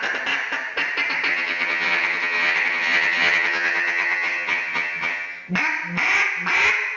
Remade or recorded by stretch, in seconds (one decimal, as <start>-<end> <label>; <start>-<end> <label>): 0.0-1.3 recorded; 1.3-5.5 remade; 5.5-7.0 recorded